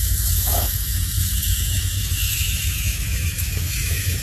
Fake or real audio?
fake